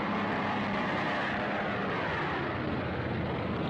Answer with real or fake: real